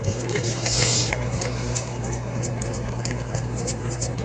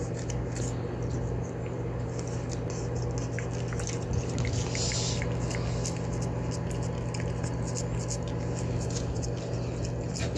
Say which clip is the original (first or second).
second